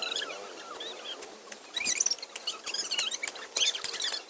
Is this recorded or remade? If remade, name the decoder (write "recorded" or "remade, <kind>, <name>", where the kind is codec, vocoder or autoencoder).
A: recorded